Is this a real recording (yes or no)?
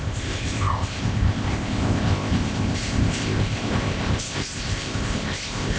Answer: no